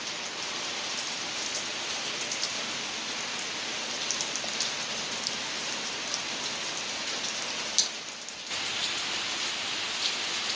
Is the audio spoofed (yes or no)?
no